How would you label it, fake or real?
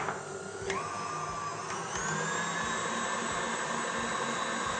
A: real